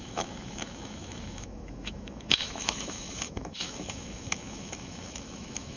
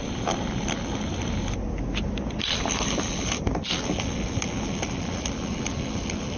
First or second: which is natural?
second